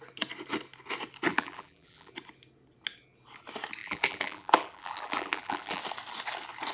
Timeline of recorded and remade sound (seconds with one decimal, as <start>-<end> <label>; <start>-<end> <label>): 0.0-1.3 recorded; 1.3-2.1 remade; 2.1-3.8 recorded; 3.8-5.8 remade; 5.8-6.7 recorded